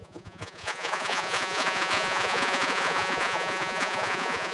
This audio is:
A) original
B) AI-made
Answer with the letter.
B